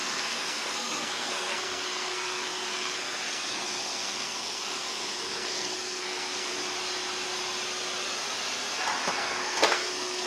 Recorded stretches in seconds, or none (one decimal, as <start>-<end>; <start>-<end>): 6.5-9.1